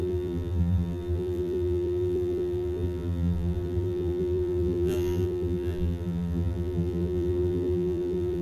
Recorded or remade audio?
remade